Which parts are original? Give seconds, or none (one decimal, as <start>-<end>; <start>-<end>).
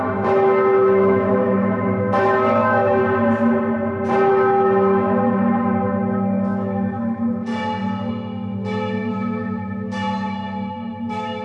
3.0-4.3; 7.5-8.1